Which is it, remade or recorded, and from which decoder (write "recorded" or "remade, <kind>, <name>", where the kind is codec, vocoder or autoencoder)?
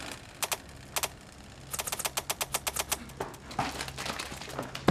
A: recorded